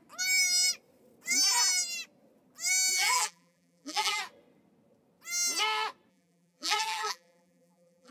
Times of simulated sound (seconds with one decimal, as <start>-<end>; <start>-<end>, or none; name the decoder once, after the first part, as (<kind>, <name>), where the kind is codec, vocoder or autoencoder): 2.9-4.2 (vocoder, BigVGAN v2); 6.1-8.1